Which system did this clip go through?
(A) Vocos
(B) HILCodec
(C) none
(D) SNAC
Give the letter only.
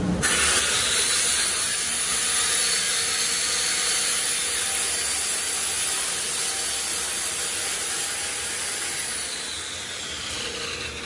C